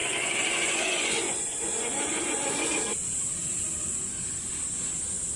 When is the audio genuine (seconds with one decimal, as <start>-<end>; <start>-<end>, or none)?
2.7-5.4